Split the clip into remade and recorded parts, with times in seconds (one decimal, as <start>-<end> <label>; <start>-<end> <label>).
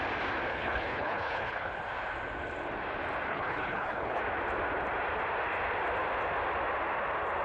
0.0-0.5 recorded; 0.5-1.7 remade; 1.7-3.3 recorded; 3.3-4.2 remade; 4.2-7.4 recorded